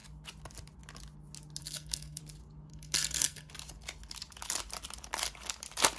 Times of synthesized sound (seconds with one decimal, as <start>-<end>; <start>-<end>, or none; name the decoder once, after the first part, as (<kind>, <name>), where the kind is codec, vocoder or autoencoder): 1.6-2.2 (codec, SNAC); 2.7-3.5